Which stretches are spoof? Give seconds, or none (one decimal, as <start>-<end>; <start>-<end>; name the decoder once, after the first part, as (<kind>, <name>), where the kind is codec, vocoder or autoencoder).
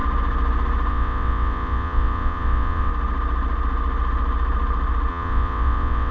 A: 0.9-2.9 (vocoder, WaveNeXt); 5.1-6.1